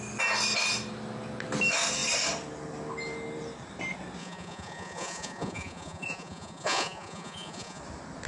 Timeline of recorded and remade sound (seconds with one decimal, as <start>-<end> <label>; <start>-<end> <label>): 0.0-4.2 recorded; 4.2-7.8 remade; 7.8-8.3 recorded